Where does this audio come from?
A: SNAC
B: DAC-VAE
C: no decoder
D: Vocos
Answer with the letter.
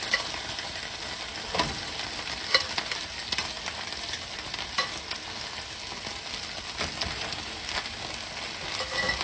C